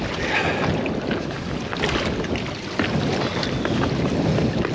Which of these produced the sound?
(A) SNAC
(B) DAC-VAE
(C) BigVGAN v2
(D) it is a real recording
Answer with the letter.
D